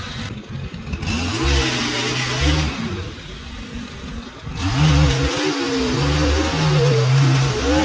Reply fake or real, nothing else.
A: real